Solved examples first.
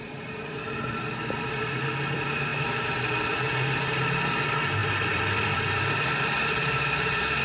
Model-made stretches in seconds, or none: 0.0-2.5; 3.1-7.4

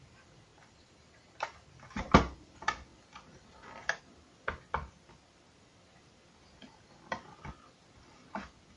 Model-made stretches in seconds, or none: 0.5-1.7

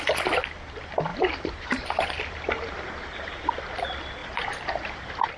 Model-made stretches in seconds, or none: 1.1-3.5; 4.2-5.4

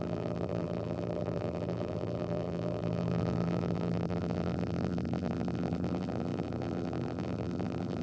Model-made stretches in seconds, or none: 0.0-8.0

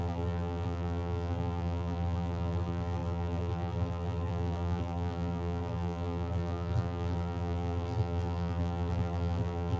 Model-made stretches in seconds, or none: 0.0-9.8

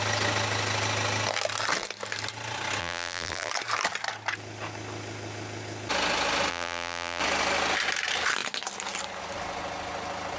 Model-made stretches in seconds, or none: 2.8-3.5; 6.5-7.2

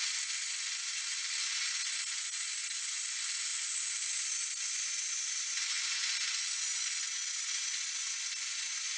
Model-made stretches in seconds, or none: none